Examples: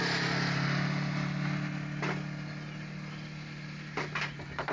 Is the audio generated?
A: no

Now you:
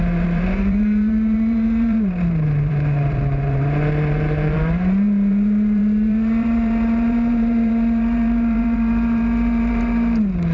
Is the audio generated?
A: yes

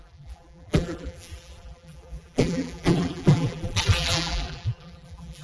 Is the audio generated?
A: yes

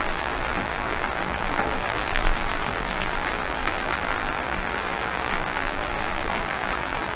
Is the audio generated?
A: yes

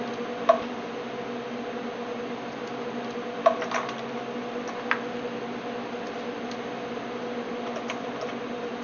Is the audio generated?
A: yes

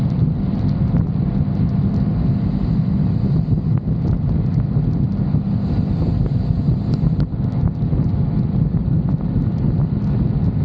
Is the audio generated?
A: no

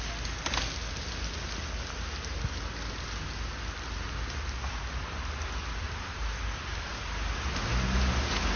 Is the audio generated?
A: no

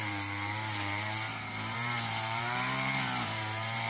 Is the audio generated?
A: yes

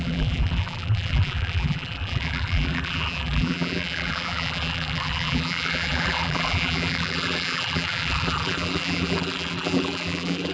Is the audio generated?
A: yes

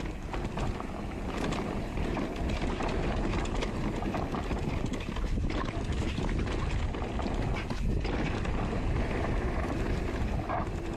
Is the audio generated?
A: no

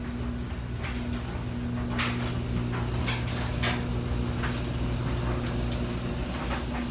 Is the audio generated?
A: no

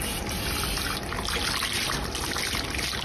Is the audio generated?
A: no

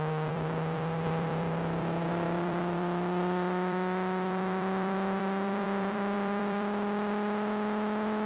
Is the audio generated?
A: yes